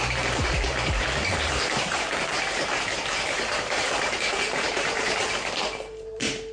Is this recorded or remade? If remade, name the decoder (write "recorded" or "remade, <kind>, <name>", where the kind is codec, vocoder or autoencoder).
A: remade, vocoder, BigVGAN v2